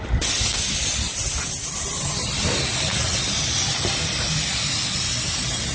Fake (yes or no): no